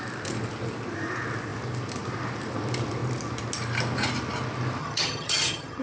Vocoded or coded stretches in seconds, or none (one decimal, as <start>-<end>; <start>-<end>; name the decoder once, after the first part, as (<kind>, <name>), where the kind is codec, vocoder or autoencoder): 4.8-5.8 (vocoder, HiFi-GAN)